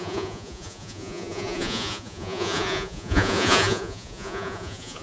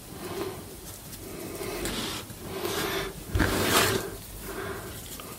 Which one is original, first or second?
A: second